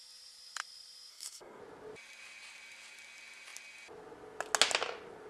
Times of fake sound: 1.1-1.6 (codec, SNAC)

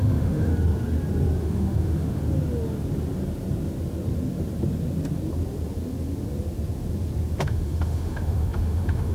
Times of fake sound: 0.0-0.5 (autoencoder, DAC-VAE); 1.4-2.2; 7.4-9.1

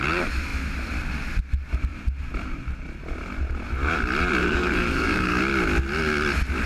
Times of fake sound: 4.4-5.4 (codec, SNAC)